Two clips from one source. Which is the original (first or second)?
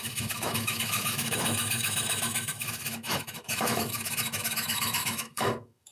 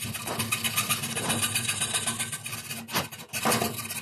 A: second